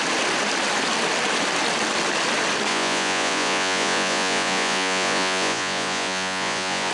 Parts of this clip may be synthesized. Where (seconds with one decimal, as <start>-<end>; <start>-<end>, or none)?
2.7-6.9